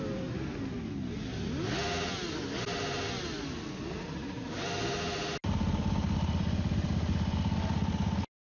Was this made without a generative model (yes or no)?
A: yes